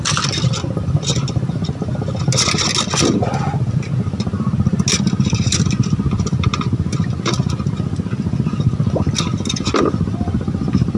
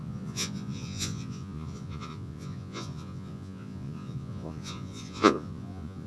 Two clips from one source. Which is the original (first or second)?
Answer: first